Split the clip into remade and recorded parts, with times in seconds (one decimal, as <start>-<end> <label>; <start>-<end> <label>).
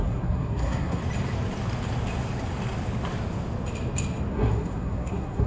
0.0-1.0 remade; 1.0-4.3 recorded; 4.3-5.5 remade